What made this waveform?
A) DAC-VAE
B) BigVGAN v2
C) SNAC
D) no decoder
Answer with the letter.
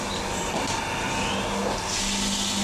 D